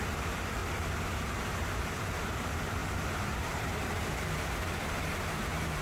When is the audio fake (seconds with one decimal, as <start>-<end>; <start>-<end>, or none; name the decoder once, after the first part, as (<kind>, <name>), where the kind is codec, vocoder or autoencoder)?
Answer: 0.0-0.6 (vocoder, BigVGAN v2); 1.9-5.8